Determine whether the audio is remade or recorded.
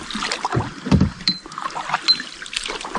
recorded